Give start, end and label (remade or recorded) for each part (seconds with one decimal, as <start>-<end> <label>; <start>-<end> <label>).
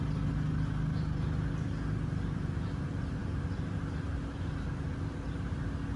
0.0-6.0 recorded